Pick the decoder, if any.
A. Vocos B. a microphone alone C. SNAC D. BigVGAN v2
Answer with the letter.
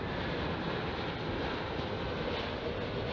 D